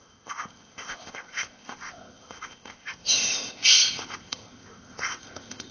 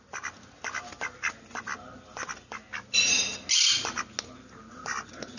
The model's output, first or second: first